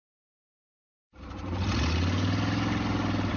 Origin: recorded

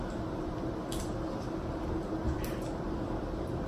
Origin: remade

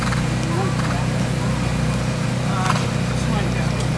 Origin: recorded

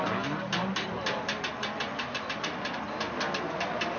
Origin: recorded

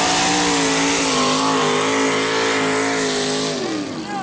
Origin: recorded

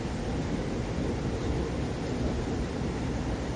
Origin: remade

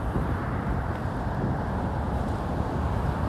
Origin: remade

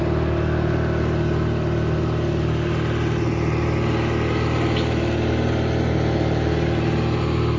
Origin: recorded